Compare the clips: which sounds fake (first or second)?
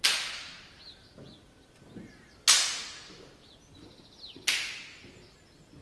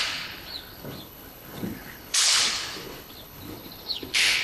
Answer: second